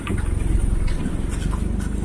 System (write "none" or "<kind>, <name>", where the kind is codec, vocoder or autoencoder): none